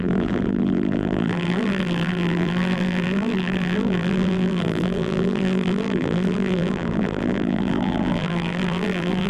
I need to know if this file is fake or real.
fake